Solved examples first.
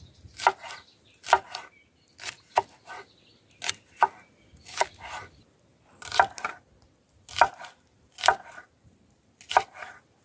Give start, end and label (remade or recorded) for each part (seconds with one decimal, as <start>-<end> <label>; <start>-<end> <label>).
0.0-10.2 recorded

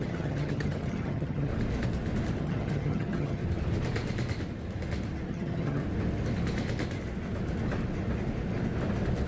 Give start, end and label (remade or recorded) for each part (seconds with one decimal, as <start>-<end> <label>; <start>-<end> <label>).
0.0-1.5 remade; 1.5-2.4 recorded; 2.4-3.4 remade; 3.4-5.3 recorded; 5.3-5.8 remade; 5.8-9.3 recorded

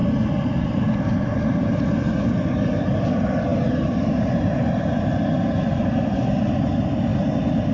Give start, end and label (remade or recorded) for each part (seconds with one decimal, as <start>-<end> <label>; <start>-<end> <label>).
0.0-7.7 recorded

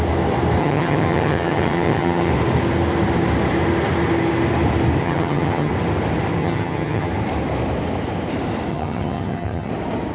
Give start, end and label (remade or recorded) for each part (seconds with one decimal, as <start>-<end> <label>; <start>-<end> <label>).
0.0-0.6 recorded; 0.6-2.3 remade; 2.3-5.0 recorded; 5.0-5.7 remade; 5.7-6.4 recorded; 6.4-7.1 remade; 7.1-8.7 recorded; 8.7-9.7 remade; 9.7-10.1 recorded

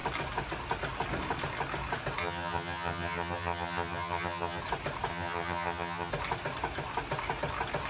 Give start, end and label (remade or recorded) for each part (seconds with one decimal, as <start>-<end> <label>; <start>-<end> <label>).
0.0-2.2 recorded; 2.2-4.6 remade; 4.6-5.1 recorded; 5.1-6.1 remade; 6.1-7.9 recorded